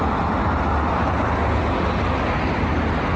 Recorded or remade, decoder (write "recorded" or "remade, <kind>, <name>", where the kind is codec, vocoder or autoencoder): recorded